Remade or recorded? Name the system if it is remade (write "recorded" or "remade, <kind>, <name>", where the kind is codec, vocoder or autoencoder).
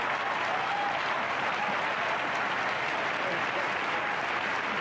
recorded